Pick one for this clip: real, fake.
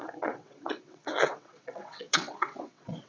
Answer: fake